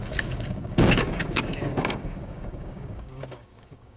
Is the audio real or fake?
fake